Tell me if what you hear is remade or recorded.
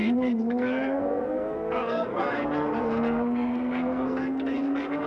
remade